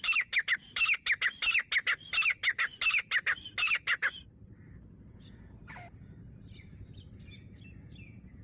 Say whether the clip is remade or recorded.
recorded